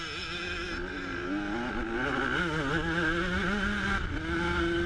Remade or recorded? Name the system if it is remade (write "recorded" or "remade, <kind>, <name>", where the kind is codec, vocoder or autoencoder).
recorded